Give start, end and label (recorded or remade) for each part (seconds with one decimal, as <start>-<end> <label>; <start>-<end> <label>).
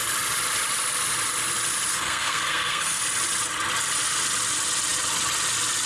0.0-1.9 recorded; 1.9-3.0 remade; 3.0-5.9 recorded